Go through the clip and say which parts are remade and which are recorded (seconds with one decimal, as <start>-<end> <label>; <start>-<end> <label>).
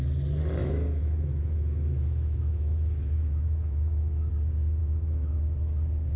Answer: 0.0-0.6 recorded; 0.6-4.3 remade; 4.3-4.8 recorded; 4.8-5.4 remade; 5.4-6.2 recorded